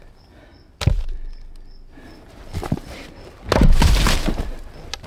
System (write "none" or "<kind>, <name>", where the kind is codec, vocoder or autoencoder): none